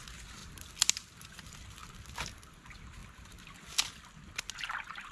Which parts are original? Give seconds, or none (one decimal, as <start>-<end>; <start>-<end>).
0.0-5.1